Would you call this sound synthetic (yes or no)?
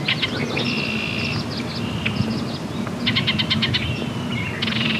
no